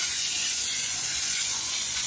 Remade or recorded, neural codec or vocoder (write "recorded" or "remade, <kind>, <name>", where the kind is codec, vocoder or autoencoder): remade, vocoder, Vocos